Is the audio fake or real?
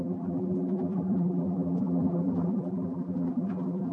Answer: fake